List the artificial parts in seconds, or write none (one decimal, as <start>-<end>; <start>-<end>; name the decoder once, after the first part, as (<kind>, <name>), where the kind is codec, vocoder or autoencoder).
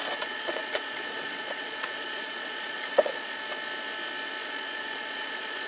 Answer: 0.0-3.4 (vocoder, Vocos); 4.4-5.7